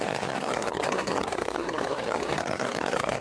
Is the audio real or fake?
fake